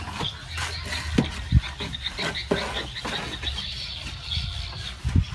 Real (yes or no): yes